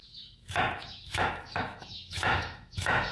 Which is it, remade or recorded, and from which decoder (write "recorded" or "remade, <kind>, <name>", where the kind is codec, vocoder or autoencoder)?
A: remade, autoencoder, DAC-VAE